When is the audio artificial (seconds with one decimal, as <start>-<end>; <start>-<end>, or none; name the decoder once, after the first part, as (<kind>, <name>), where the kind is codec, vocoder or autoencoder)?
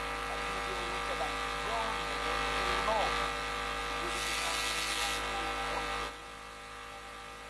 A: none